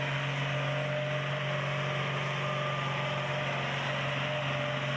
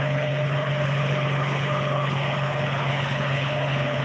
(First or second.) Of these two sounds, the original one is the first